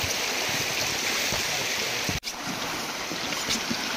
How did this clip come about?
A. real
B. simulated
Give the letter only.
A